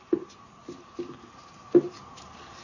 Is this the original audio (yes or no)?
yes